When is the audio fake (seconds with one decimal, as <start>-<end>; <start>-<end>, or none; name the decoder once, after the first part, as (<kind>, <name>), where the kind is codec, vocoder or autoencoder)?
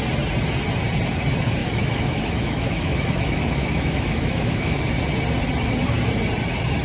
1.6-4.8 (autoencoder, DAC-VAE)